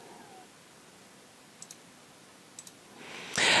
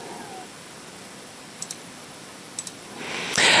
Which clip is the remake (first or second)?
second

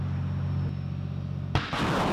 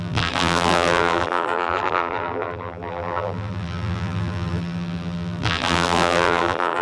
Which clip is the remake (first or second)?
second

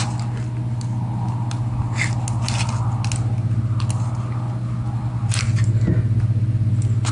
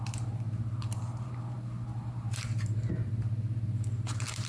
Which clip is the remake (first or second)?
second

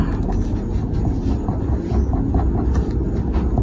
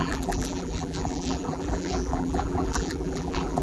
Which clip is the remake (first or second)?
second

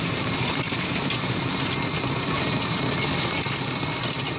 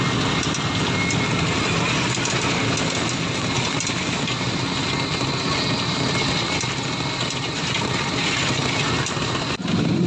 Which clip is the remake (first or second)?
first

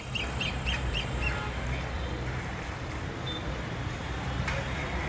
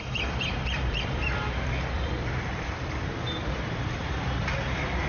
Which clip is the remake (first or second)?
second